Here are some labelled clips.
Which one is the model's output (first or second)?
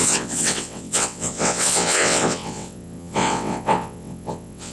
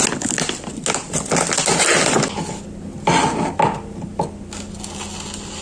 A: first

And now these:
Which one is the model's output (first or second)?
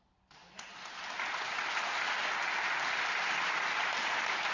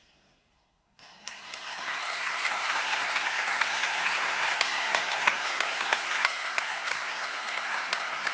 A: second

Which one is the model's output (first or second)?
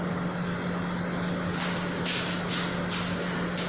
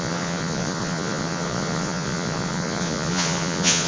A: second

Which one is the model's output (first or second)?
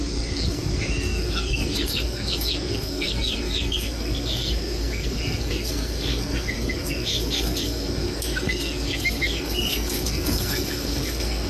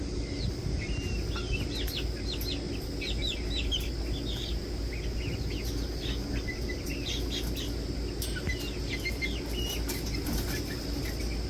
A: first